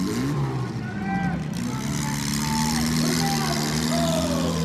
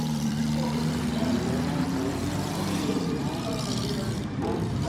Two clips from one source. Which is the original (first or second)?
first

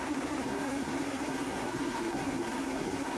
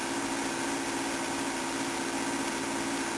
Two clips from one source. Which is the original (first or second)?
second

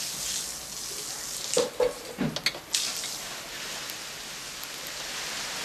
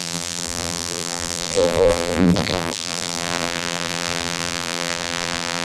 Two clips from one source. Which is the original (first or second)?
first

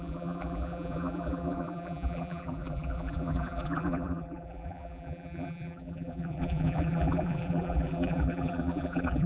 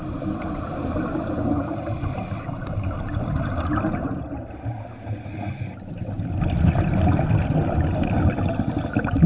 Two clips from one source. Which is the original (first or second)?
second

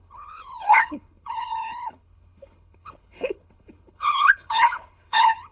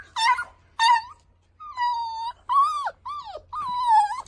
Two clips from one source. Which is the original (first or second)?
second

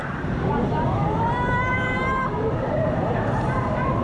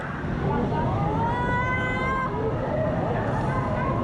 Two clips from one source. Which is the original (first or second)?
second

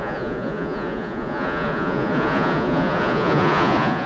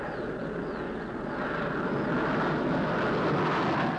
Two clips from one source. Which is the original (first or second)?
second